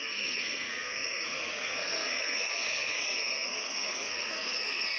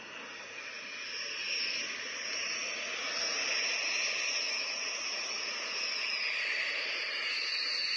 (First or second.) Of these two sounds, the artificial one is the first